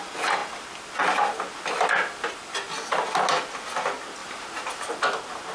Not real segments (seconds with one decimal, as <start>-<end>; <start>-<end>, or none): none